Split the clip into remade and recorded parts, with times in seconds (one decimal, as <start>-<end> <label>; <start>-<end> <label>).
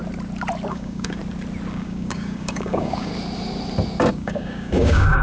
0.0-0.7 recorded; 0.7-1.2 remade; 1.2-1.7 recorded; 1.7-3.1 remade; 3.1-4.1 recorded; 4.1-5.2 remade